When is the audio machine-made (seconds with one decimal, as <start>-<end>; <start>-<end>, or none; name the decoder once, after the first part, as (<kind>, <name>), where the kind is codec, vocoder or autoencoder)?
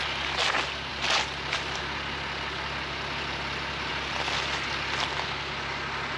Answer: none